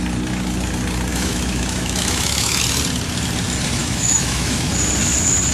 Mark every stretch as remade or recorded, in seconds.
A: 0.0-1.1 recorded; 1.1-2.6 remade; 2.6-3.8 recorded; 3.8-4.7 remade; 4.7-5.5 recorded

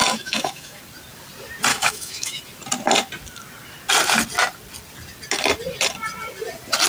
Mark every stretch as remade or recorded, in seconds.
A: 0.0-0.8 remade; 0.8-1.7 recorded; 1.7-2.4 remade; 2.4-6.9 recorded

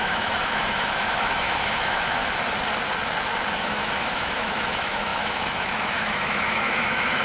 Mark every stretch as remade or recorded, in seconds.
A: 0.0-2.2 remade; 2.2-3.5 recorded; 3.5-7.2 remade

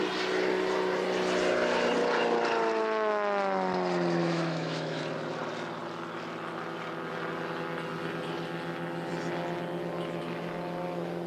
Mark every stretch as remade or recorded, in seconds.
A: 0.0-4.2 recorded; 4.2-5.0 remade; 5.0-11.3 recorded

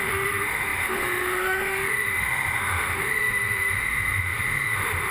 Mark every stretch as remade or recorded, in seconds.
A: 0.0-5.1 remade